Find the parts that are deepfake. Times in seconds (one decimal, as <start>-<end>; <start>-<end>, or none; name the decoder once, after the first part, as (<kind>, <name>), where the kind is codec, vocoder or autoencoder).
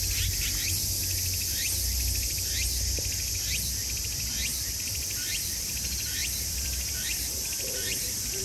6.2-8.4 (vocoder, BigVGAN v2)